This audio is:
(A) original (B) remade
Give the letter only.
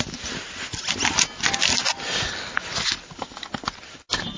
A